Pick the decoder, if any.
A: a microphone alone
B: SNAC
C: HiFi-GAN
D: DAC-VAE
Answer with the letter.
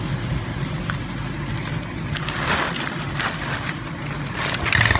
A